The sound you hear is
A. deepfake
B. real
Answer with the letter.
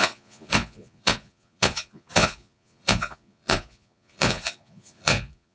A